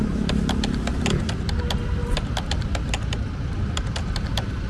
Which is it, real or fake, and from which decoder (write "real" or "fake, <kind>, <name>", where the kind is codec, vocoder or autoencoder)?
real